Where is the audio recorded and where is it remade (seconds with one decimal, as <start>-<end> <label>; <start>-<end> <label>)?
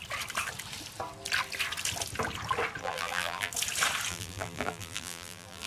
0.0-2.8 recorded; 2.8-3.5 remade; 3.5-4.1 recorded; 4.1-5.7 remade